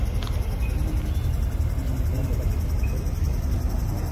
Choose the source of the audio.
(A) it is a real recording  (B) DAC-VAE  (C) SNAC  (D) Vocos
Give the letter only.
A